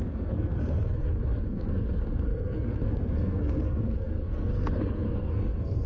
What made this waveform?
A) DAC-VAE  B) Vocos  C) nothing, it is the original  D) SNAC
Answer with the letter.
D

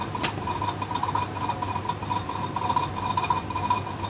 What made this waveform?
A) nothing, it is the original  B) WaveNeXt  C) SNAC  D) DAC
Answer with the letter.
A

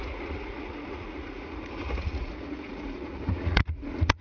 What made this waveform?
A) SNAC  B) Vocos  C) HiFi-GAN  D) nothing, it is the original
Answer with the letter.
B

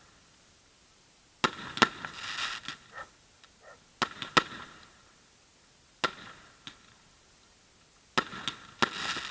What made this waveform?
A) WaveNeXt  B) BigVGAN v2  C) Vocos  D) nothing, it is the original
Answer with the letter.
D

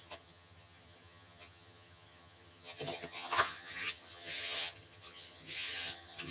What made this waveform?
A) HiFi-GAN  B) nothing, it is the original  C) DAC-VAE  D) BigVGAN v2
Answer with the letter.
A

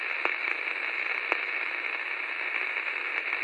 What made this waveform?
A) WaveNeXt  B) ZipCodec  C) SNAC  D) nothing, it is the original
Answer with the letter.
D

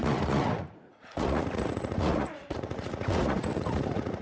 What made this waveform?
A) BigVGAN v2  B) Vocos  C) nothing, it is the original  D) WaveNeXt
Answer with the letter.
B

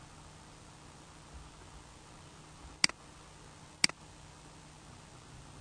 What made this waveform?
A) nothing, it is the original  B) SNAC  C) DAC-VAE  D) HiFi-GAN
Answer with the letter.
A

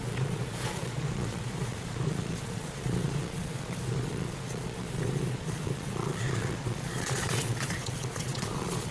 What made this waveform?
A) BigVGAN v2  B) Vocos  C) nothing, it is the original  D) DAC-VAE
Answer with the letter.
B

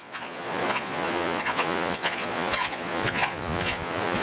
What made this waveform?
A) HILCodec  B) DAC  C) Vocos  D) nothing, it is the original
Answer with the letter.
C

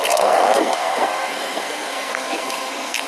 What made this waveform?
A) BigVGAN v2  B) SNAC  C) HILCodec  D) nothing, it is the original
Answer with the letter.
B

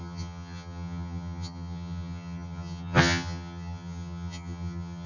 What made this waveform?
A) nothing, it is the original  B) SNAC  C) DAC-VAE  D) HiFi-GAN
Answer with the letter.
D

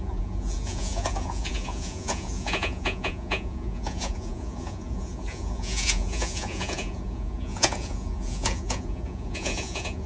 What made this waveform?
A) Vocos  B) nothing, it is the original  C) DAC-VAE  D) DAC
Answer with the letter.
A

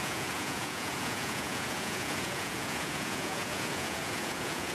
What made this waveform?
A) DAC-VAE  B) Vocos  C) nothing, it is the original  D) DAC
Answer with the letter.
B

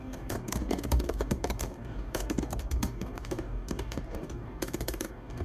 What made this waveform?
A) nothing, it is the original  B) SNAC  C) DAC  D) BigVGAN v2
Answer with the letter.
C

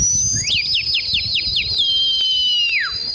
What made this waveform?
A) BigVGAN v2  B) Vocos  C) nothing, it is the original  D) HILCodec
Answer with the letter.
C